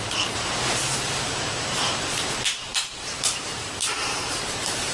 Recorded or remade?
remade